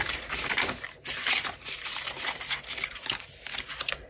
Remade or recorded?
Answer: recorded